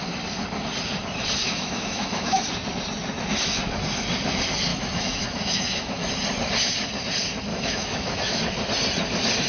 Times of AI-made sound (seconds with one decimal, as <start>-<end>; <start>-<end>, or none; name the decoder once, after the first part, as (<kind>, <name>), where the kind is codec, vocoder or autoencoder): 1.4-2.4 (autoencoder, DAC-VAE); 4.7-6.1; 7.5-8.4